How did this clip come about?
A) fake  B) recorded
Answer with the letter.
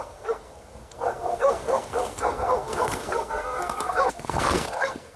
A